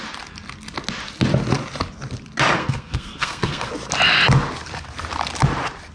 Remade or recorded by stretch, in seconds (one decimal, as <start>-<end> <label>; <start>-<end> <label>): 0.0-2.6 recorded; 2.6-3.7 remade; 3.7-5.9 recorded

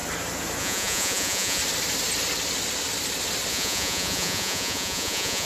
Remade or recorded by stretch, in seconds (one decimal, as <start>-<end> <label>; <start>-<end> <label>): 0.0-0.6 recorded; 0.6-1.6 remade; 1.6-3.5 recorded; 3.5-5.5 remade

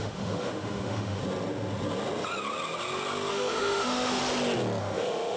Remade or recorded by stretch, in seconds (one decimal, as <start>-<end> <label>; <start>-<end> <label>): 0.0-1.2 remade; 1.2-3.3 recorded; 3.3-4.2 remade; 4.2-4.8 recorded; 4.8-5.4 remade